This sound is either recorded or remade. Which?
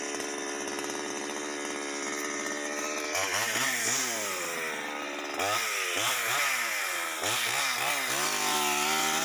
recorded